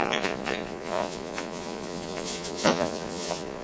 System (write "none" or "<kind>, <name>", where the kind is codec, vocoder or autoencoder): vocoder, Vocos